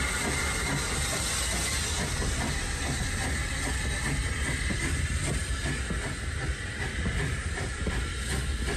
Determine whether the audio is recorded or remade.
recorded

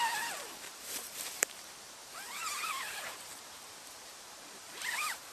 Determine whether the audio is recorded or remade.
remade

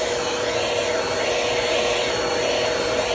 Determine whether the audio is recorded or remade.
recorded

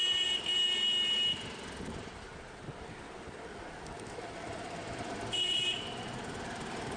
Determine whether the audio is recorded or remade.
remade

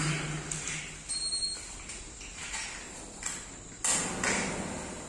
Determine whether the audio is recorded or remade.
recorded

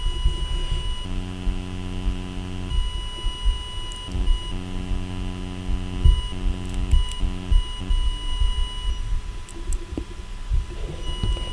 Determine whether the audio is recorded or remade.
recorded